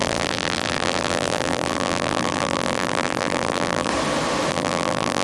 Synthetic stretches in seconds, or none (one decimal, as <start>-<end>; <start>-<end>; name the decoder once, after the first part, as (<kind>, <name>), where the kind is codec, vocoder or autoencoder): 0.0-3.9 (vocoder, BigVGAN v2); 4.5-5.2